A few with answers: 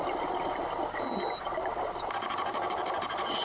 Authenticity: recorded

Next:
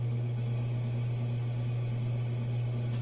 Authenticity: recorded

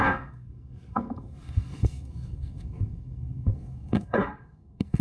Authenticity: remade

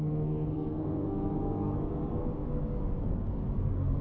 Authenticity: remade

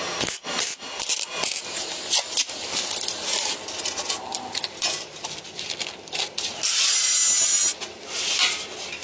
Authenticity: recorded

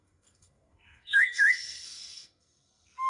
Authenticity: remade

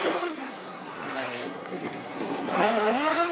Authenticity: remade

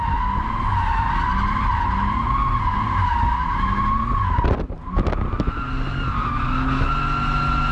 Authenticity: recorded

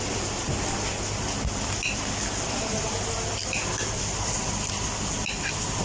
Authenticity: recorded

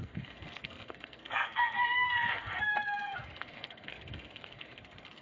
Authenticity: remade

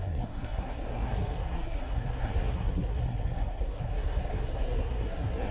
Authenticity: remade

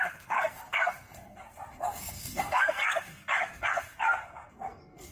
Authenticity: remade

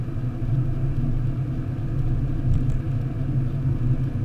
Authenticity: recorded